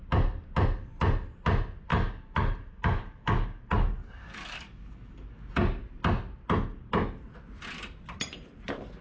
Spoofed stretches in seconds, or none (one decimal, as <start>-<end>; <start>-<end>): 1.9-5.5

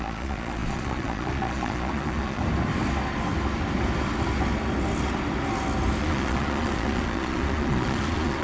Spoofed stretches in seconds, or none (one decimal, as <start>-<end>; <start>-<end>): 0.0-2.4; 6.0-8.4